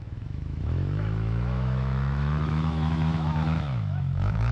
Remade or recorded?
remade